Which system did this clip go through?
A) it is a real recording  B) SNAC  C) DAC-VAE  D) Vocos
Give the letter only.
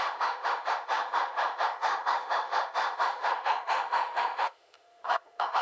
C